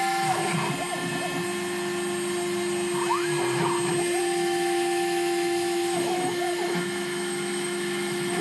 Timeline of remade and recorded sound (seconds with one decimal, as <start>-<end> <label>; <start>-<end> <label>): 0.0-0.4 remade; 0.4-4.2 recorded; 4.2-8.4 remade